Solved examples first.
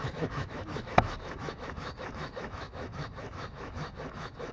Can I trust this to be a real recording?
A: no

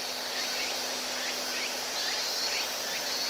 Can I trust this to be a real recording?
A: yes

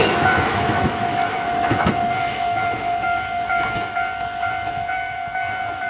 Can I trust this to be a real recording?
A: no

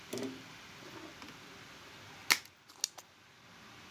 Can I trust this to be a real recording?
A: yes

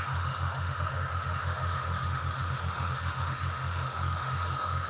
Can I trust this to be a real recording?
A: no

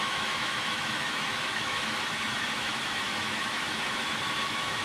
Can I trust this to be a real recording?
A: no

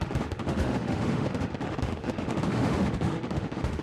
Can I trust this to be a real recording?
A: no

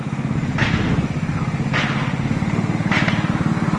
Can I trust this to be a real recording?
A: yes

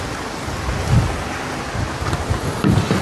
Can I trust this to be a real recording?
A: yes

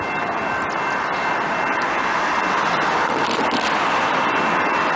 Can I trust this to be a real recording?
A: yes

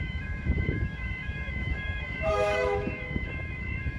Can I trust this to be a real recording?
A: no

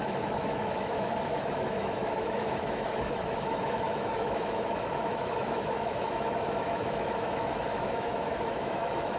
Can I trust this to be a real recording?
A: no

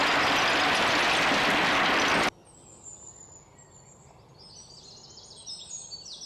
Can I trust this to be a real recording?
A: yes